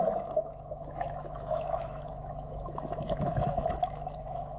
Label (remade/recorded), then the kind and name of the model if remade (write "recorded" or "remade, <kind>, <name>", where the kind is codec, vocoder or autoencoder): remade, autoencoder, DAC-VAE